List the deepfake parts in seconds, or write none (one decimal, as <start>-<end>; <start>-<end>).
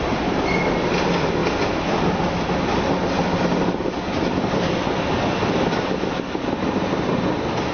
none